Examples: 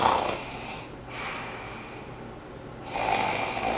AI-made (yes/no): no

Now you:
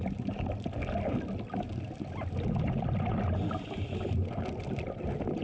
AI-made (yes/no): no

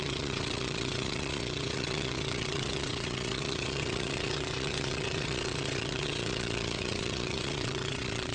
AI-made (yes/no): yes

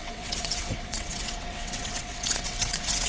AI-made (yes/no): yes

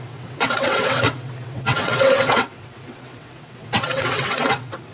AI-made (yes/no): yes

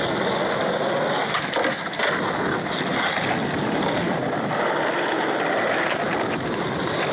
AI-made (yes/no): no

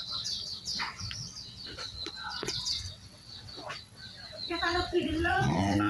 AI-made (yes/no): yes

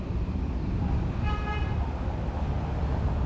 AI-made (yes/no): no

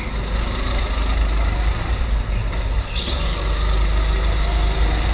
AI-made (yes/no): no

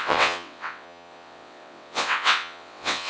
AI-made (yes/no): yes